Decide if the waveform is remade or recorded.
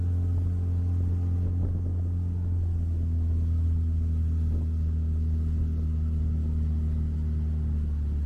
recorded